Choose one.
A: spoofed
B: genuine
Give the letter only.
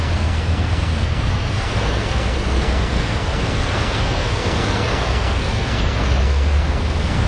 A